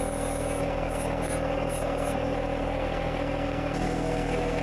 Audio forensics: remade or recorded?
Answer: remade